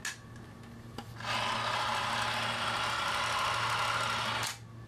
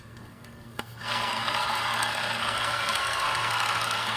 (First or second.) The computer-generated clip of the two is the second